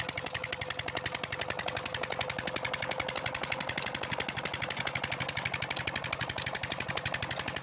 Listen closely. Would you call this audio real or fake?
real